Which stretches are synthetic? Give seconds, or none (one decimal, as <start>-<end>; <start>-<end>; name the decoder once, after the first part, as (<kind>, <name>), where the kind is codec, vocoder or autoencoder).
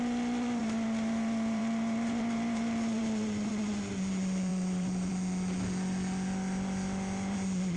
0.6-3.5 (vocoder, BigVGAN v2); 4.5-5.1